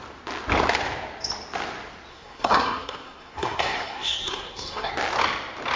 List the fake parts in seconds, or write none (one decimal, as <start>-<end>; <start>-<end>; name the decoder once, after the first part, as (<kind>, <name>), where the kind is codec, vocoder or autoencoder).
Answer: 2.1-4.9 (codec, SNAC)